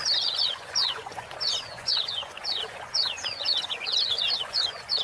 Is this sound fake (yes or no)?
yes